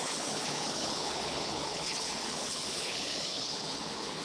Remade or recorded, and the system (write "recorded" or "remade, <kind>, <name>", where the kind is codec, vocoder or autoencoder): remade, codec, HILCodec